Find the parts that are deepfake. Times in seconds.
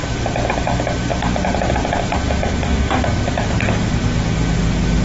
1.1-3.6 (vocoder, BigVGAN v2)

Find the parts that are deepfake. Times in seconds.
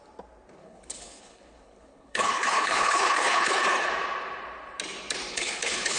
0.6-3.9 (codec, HILCodec); 5.3-6.0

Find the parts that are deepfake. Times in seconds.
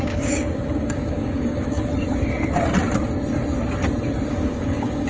0.0-1.9 (codec, DAC); 4.3-5.1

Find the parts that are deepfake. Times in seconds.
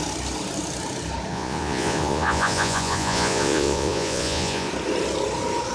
1.3-4.7 (vocoder, Vocos)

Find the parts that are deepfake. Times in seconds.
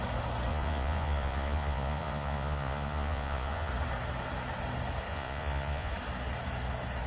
0.5-3.7 (vocoder, Vocos); 5.1-5.9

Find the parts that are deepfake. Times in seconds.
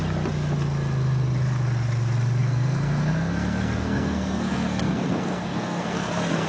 2.4-6.5 (codec, SNAC)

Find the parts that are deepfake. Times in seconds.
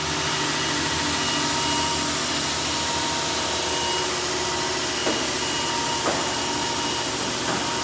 none